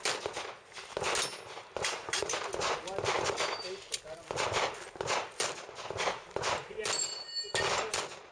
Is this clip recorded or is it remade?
recorded